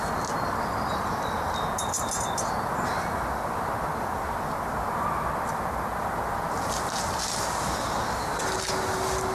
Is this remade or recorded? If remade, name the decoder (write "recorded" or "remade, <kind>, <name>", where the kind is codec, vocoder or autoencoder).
recorded